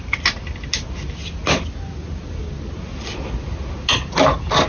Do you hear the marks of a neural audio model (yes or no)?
no